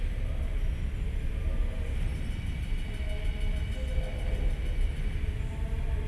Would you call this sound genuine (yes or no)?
yes